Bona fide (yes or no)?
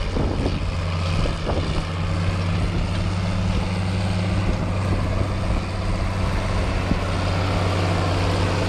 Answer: yes